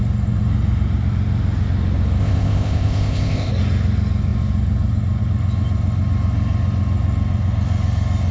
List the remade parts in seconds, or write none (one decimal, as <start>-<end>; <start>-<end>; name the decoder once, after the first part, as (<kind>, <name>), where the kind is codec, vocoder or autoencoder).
2.2-3.5 (codec, ZipCodec)

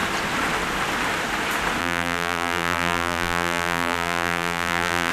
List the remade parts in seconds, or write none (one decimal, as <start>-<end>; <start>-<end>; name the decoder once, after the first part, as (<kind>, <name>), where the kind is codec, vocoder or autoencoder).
1.8-5.1 (vocoder, BigVGAN v2)

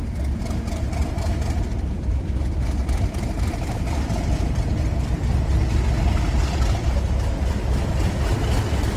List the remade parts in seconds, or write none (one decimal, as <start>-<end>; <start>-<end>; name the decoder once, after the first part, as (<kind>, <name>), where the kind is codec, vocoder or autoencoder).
1.0-2.3 (vocoder, BigVGAN v2); 2.8-4.6

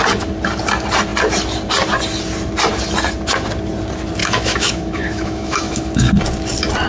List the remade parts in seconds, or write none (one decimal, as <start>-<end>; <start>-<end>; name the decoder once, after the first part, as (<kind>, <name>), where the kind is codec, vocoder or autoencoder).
4.2-6.1 (autoencoder, DAC-VAE)

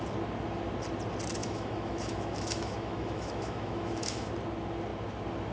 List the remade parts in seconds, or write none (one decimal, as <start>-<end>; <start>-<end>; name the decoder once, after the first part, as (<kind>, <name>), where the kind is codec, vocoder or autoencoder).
1.4-4.3 (autoencoder, DAC-VAE)

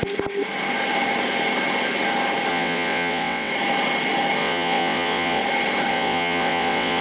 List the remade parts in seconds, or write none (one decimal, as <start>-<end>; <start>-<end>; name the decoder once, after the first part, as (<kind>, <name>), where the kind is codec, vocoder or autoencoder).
2.5-3.5 (vocoder, WaveNeXt); 4.4-5.4; 5.9-7.0

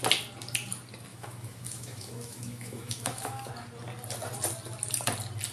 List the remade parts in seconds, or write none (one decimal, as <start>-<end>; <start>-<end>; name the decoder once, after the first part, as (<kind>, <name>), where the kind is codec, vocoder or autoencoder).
1.1-3.5 (autoencoder, DAC-VAE)

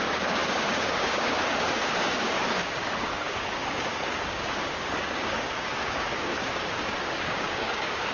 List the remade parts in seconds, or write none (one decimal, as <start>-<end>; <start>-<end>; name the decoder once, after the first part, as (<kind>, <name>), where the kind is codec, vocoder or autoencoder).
0.0-8.1 (codec, DAC)